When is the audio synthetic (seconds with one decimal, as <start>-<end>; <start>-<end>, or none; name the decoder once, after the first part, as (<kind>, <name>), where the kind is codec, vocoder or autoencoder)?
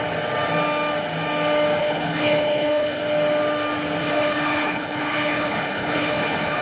1.8-3.0 (codec, HILCodec); 4.0-6.6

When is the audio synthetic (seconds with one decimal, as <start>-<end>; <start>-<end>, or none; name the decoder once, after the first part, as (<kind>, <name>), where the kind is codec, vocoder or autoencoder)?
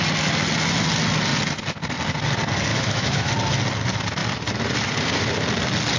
2.7-3.3 (autoencoder, DAC-VAE)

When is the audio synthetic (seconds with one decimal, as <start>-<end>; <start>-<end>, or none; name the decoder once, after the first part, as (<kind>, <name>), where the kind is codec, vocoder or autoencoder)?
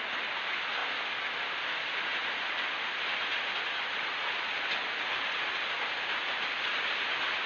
none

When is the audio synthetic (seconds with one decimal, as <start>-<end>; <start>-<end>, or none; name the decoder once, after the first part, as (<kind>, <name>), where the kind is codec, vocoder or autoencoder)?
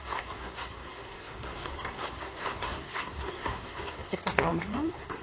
0.0-5.2 (codec, SNAC)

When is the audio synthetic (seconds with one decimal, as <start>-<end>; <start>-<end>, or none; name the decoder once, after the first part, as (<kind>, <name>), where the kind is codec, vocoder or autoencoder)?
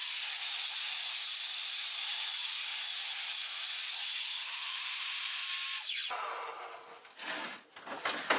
none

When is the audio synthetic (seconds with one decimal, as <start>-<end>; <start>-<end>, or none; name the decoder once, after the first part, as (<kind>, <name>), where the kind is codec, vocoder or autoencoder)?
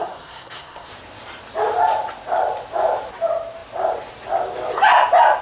0.0-0.9 (codec, SNAC)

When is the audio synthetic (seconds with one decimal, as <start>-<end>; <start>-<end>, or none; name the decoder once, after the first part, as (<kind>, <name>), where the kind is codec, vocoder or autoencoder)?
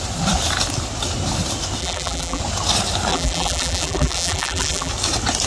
1.8-2.4 (vocoder, BigVGAN v2); 3.1-4.9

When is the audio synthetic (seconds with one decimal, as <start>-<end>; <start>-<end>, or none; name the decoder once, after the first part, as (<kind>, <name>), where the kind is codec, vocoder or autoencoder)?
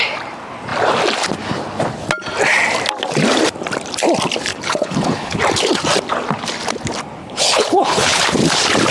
4.5-5.4 (codec, HILCodec); 7.2-8.2